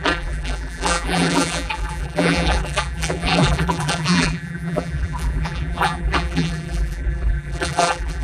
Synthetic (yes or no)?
yes